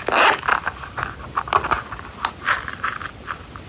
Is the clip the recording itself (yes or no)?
yes